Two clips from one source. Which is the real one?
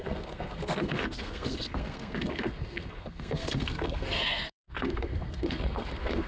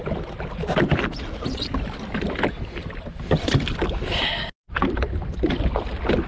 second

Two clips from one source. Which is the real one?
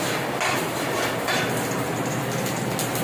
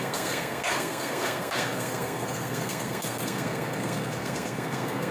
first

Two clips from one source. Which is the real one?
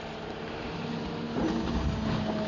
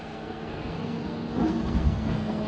first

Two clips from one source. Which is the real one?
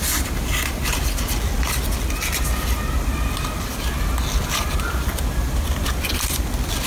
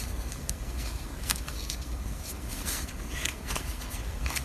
first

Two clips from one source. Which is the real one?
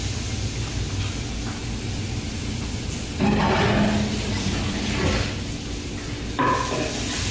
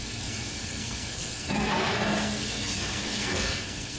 first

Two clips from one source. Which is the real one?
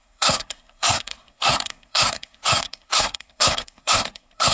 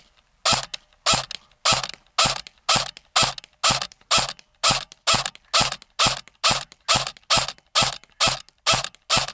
second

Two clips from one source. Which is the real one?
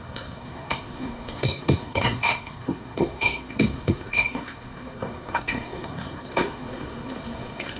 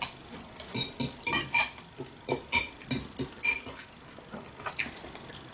second